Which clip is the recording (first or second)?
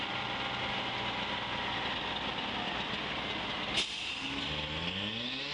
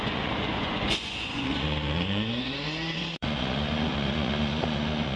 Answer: first